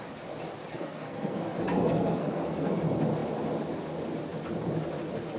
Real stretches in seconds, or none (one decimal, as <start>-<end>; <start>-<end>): 0.0-0.7; 2.8-5.4